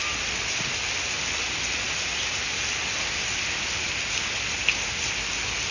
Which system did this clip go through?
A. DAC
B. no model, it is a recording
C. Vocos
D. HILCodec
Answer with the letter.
B